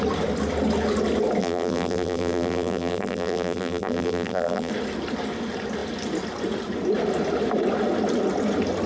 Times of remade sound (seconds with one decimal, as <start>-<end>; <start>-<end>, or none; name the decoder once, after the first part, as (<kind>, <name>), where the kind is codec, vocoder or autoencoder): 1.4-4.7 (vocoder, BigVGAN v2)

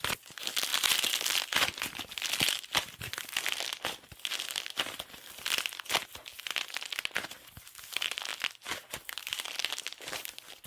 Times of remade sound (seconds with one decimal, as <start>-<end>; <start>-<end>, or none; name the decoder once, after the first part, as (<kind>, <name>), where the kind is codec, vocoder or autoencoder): none

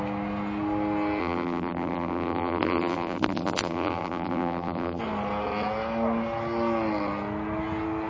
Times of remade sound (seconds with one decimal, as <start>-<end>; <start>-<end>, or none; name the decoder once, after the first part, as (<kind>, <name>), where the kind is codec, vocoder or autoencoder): 1.2-5.0 (vocoder, BigVGAN v2)